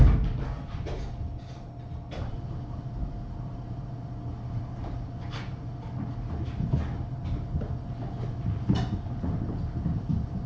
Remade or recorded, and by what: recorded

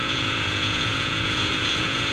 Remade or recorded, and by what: remade, vocoder, Vocos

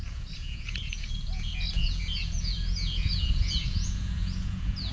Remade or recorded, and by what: remade, vocoder, Vocos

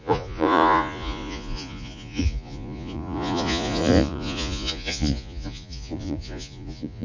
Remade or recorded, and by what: remade, vocoder, Vocos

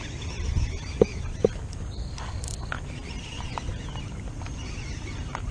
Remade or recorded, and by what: recorded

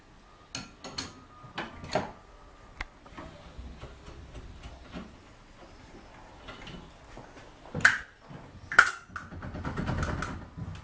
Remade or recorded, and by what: recorded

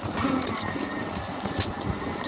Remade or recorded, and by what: remade, vocoder, Vocos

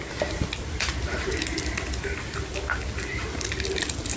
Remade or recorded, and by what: recorded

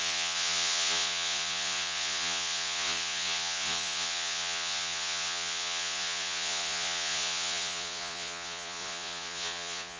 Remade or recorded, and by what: remade, vocoder, Vocos